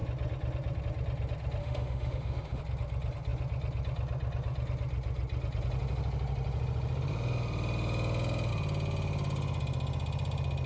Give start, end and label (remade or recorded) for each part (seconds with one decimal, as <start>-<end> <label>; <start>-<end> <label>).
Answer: 0.0-1.6 recorded; 1.6-2.6 remade; 2.6-10.7 recorded